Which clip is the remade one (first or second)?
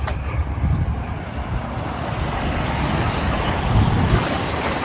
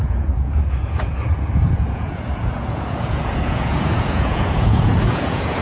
second